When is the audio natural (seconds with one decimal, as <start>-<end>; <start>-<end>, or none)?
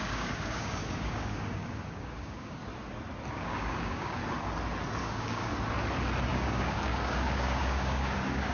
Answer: 2.6-3.3; 4.2-5.0; 5.5-6.3